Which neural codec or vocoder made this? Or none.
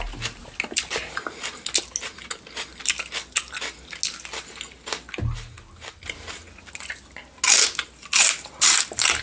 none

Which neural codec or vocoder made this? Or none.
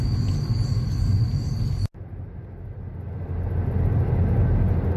none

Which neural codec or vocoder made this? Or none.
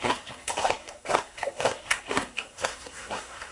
codec, SNAC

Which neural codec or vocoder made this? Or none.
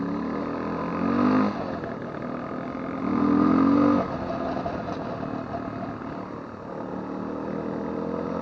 none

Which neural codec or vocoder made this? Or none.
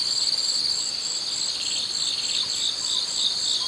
vocoder, BigVGAN v2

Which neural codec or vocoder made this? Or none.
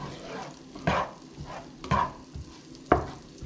none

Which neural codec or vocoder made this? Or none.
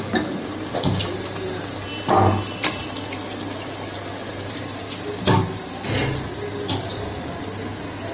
none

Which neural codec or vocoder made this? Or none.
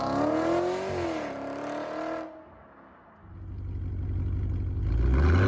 none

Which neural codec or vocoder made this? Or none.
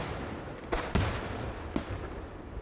none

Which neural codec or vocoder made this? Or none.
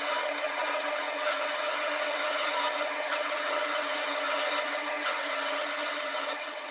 vocoder, HiFi-GAN